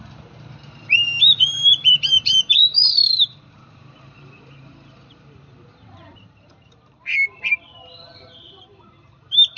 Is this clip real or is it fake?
fake